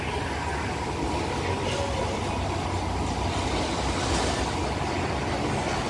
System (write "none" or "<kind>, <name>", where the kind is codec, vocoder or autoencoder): none